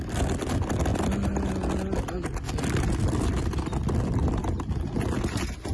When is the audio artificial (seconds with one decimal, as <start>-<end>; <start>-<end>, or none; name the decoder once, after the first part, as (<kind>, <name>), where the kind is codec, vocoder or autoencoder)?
none